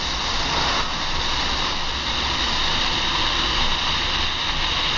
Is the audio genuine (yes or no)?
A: yes